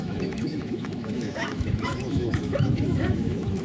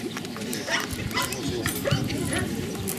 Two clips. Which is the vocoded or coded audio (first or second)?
first